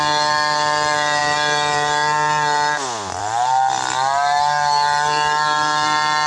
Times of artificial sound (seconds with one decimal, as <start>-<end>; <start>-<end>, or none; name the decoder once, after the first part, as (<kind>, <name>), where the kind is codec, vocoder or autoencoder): none